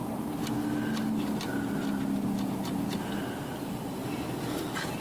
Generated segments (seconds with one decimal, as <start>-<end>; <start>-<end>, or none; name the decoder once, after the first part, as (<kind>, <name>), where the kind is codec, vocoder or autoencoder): 3.0-4.0 (vocoder, BigVGAN v2)